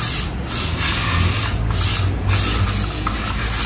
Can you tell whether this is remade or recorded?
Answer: recorded